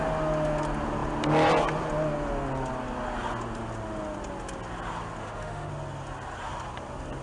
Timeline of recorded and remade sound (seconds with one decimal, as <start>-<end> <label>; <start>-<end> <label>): 0.0-5.2 recorded; 5.2-5.7 remade; 5.7-7.2 recorded